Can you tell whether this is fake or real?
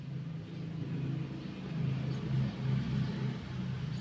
real